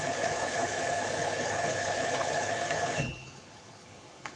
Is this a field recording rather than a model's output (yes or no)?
no